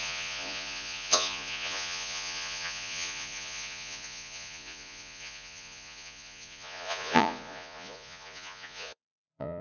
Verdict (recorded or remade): remade